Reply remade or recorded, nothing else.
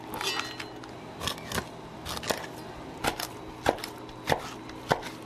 recorded